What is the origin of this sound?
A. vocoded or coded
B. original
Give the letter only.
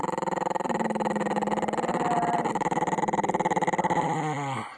B